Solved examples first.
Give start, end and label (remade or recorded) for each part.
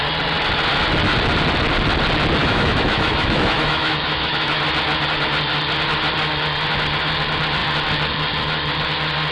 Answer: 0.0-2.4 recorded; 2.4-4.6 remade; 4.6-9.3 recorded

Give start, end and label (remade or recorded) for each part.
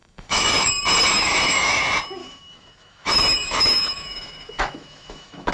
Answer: 0.0-0.7 remade; 0.7-1.1 recorded; 1.1-1.8 remade; 1.8-2.2 recorded; 2.2-5.5 remade